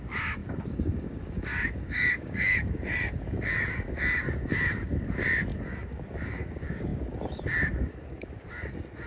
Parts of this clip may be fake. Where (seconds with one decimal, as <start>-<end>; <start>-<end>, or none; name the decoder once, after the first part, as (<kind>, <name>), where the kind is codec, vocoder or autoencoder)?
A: 0.0-9.1 (codec, DAC)

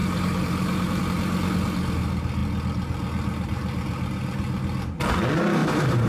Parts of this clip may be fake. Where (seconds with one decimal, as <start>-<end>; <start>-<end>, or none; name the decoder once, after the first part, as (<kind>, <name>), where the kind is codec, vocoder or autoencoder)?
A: 0.0-1.0 (vocoder, BigVGAN v2); 5.6-6.1

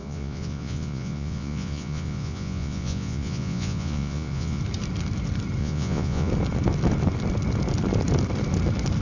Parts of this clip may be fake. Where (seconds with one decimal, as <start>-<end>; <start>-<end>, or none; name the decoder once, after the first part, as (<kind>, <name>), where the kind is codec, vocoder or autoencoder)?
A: 0.0-4.6 (vocoder, Vocos); 5.6-6.3

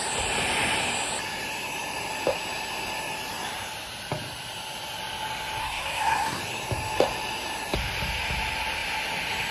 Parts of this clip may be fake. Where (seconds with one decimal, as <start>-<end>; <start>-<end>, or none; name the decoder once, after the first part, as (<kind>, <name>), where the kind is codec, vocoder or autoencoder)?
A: 5.6-6.4 (codec, SNAC)

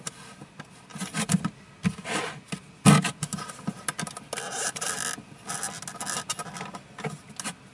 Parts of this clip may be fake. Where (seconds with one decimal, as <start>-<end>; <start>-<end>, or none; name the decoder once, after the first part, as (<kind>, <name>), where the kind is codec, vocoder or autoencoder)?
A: none

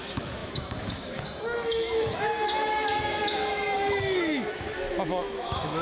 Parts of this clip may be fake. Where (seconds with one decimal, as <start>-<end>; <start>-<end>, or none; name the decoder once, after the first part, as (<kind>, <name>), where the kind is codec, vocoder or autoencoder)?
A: 0.0-5.8 (autoencoder, DAC-VAE)